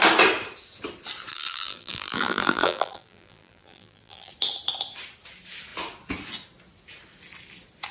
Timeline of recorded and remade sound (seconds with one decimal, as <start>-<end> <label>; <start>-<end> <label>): 0.0-1.3 recorded; 1.3-4.3 remade; 4.3-7.9 recorded